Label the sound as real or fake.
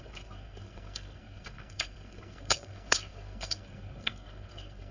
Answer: fake